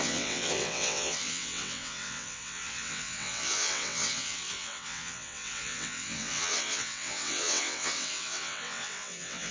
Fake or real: fake